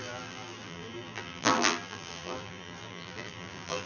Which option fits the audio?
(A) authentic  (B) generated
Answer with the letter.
B